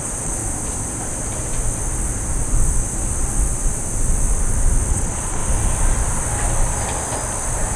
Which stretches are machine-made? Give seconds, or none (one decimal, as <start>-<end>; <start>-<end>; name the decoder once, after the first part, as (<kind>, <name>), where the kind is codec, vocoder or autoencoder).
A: 0.0-0.4 (vocoder, Vocos); 4.9-5.4